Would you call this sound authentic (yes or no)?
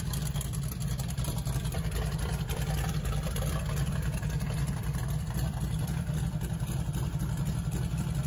no